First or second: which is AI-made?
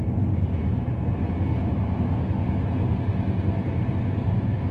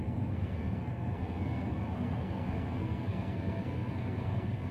second